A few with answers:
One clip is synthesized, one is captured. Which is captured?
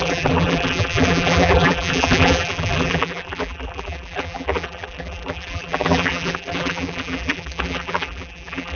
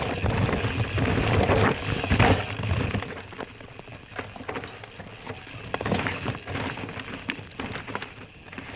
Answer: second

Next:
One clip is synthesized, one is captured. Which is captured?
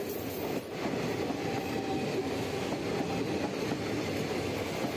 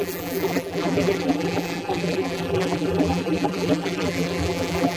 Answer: first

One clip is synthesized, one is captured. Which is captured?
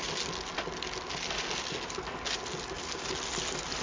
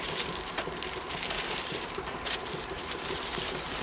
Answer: first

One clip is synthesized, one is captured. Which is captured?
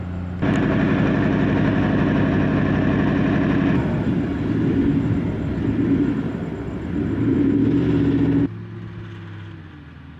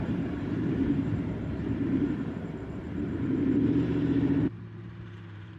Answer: first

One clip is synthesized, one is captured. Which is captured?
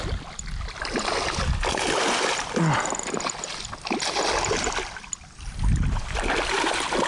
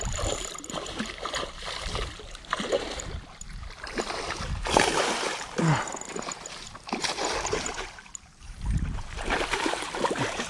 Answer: first